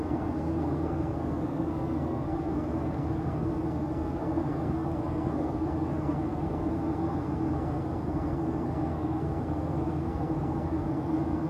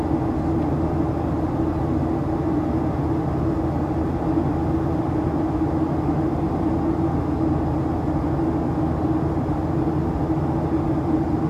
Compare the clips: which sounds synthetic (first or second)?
first